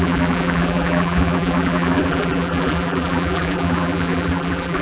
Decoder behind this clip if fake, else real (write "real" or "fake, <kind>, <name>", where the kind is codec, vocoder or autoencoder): fake, vocoder, BigVGAN v2